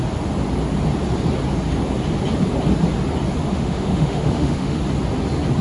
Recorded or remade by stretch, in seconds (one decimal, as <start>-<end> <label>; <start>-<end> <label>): 0.0-3.5 recorded; 3.5-4.8 remade; 4.8-5.6 recorded